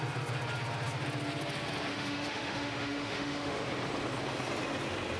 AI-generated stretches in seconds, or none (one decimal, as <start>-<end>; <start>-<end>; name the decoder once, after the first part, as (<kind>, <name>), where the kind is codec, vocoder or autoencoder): 1.9-3.6 (autoencoder, DAC-VAE)